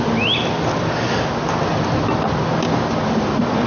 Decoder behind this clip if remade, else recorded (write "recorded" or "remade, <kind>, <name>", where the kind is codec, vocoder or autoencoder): recorded